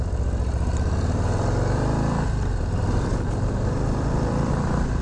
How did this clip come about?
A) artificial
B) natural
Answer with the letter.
A